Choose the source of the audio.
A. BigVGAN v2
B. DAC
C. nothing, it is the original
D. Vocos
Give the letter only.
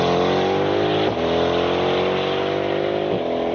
C